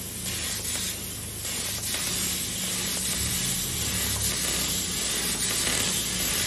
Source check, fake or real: real